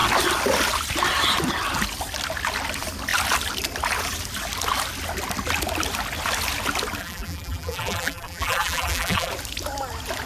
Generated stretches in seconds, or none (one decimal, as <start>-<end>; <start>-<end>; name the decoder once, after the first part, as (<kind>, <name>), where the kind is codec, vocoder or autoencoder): 7.0-9.3 (vocoder, BigVGAN v2)